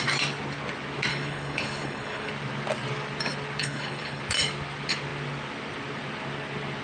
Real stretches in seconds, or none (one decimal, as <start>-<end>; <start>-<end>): 0.0-1.1; 2.3-3.6; 4.2-6.8